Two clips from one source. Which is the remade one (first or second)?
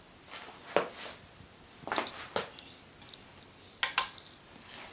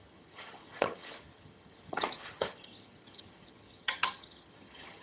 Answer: second